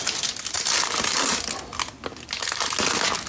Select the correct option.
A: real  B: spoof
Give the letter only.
A